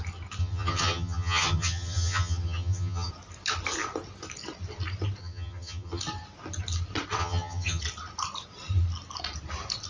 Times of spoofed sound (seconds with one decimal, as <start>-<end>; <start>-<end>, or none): 0.4-3.1; 5.2-6.0; 7.2-7.8